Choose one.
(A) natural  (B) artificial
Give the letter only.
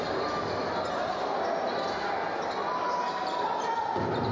A